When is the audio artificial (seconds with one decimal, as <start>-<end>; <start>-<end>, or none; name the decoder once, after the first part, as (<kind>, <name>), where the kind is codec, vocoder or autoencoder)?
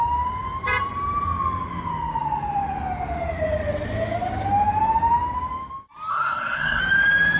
6.1-6.8 (codec, SNAC)